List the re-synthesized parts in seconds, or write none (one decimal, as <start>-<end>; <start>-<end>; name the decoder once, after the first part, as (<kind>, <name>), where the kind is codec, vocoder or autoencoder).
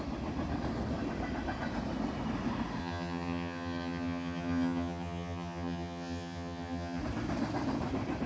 2.8-7.0 (vocoder, HiFi-GAN)